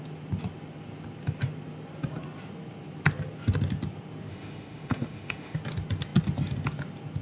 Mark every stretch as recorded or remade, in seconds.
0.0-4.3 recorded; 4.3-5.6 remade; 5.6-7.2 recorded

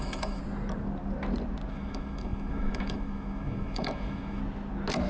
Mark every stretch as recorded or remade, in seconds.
0.0-0.4 remade; 0.4-1.7 recorded; 1.7-4.4 remade; 4.4-5.1 recorded

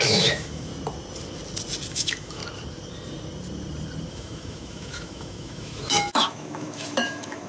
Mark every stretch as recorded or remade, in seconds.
0.0-0.7 remade; 0.7-1.9 recorded; 1.9-2.4 remade; 2.4-4.1 recorded; 4.1-7.5 remade

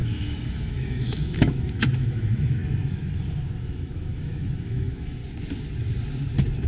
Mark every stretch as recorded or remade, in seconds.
0.0-2.6 remade; 2.6-3.6 recorded; 3.6-5.2 remade; 5.2-6.7 recorded

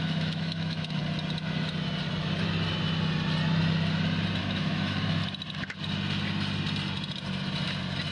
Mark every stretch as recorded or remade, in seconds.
0.0-1.0 remade; 1.0-4.4 recorded; 4.4-5.2 remade; 5.2-8.1 recorded

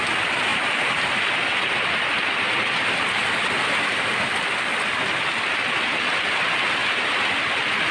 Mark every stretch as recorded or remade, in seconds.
0.0-7.9 recorded